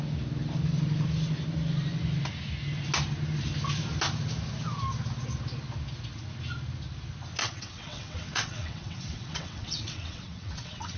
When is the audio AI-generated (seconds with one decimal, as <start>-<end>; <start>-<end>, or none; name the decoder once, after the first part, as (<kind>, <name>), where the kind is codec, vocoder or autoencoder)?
7.4-11.0 (vocoder, WaveNeXt)